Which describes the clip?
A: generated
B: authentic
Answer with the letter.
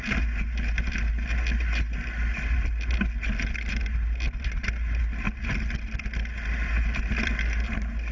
B